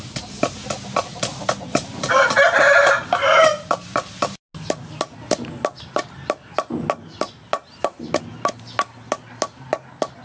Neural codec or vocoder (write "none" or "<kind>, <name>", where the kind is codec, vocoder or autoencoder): none